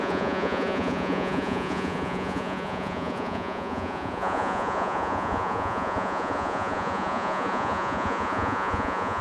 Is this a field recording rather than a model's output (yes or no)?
no